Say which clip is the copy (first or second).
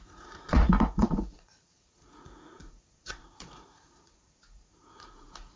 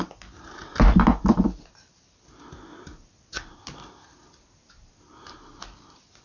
first